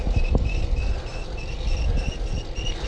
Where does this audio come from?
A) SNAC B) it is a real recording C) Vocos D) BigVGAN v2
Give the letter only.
B